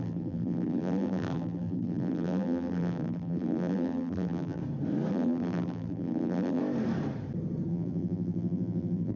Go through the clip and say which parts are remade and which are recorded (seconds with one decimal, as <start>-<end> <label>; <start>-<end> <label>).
0.0-4.6 remade; 4.6-5.1 recorded; 5.1-6.6 remade; 6.6-7.7 recorded; 7.7-9.2 remade